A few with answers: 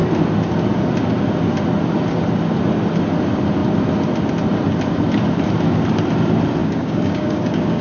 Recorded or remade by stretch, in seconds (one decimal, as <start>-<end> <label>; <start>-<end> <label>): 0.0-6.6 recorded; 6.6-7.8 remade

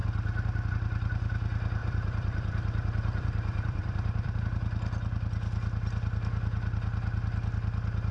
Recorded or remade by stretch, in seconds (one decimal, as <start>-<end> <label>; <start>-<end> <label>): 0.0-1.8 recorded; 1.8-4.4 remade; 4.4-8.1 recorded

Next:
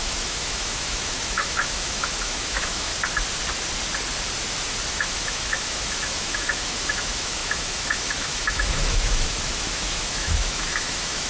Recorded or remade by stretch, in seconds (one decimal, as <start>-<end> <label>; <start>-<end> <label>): 0.0-2.9 remade; 2.9-4.9 recorded; 4.9-11.3 remade